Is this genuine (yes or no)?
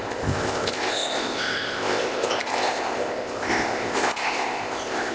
no